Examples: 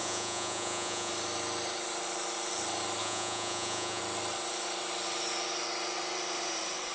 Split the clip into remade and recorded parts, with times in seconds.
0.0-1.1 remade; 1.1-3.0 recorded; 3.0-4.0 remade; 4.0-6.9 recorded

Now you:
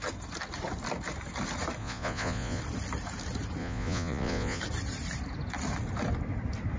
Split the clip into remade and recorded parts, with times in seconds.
0.0-1.8 recorded; 1.8-2.6 remade; 2.6-3.6 recorded; 3.6-4.6 remade; 4.6-6.8 recorded

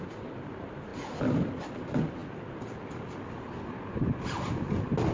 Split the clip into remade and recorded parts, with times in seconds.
0.0-5.1 recorded